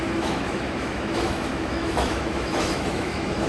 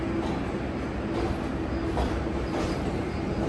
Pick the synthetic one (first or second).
first